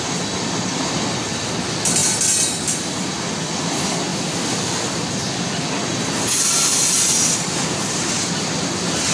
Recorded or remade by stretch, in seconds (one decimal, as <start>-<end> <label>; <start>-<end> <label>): 0.0-9.1 recorded